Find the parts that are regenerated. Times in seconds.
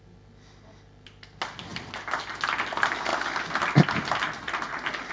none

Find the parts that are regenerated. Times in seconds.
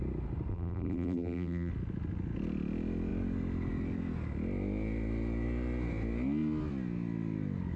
0.5-1.7 (vocoder, BigVGAN v2)